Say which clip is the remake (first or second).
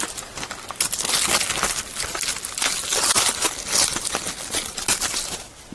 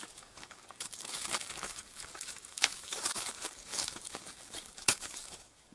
second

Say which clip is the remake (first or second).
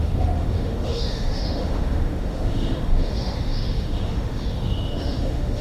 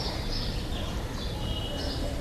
first